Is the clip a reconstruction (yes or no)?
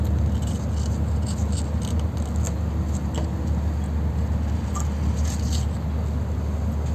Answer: no